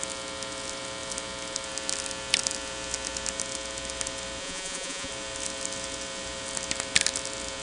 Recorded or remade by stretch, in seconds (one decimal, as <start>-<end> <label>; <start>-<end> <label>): 0.0-4.4 recorded; 4.4-5.1 remade; 5.1-7.6 recorded